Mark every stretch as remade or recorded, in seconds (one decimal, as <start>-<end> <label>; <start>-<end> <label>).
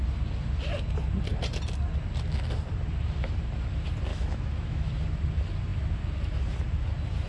0.0-4.1 recorded; 4.1-4.9 remade; 4.9-7.3 recorded